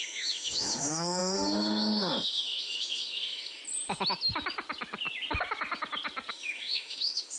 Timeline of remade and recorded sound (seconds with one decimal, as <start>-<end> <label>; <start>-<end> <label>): 0.0-3.6 remade; 3.6-6.3 recorded; 6.3-7.4 remade